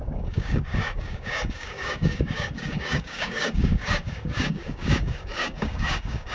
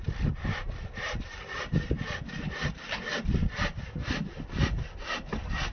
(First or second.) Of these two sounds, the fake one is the first